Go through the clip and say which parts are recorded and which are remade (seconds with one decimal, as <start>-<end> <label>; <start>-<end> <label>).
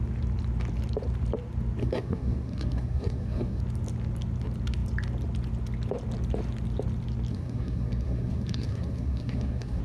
0.0-1.8 recorded; 1.8-3.6 remade; 3.6-7.3 recorded; 7.3-9.8 remade